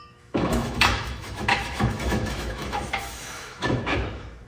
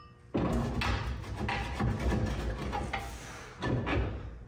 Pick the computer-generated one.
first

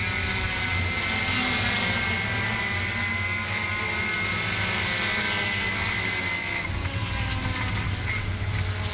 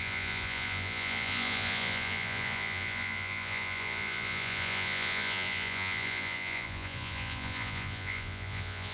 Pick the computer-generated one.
second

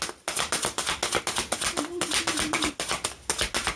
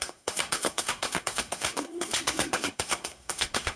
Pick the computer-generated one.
second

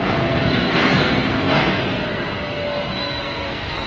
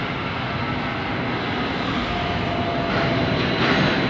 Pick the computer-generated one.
first